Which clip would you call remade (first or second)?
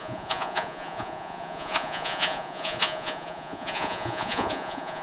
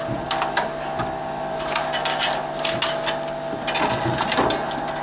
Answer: first